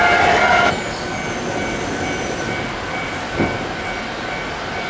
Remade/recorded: recorded